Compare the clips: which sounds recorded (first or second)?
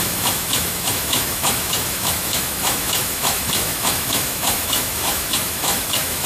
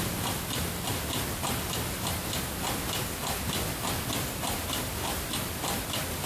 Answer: second